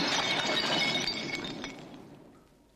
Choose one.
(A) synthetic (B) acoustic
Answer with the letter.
B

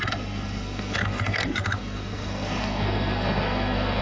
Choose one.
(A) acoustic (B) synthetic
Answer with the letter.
B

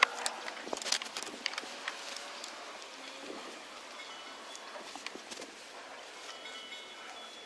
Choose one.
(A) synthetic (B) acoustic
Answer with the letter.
B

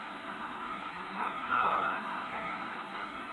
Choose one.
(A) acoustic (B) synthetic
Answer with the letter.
B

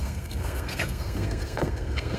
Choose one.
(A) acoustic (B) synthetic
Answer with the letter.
B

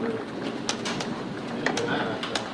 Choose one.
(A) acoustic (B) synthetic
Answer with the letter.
A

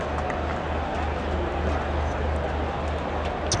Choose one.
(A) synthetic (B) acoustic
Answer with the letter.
B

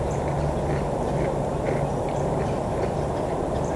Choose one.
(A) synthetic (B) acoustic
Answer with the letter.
B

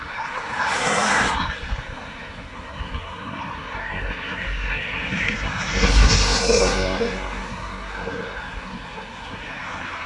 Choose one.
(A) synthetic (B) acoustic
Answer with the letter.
A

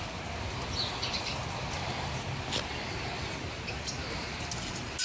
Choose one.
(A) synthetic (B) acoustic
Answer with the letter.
B